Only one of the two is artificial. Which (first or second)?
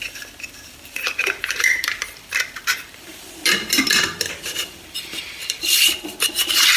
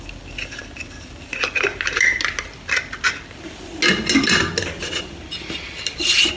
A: first